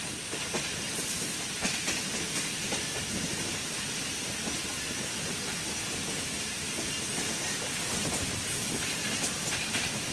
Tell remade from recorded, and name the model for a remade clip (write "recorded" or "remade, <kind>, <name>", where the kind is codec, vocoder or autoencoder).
recorded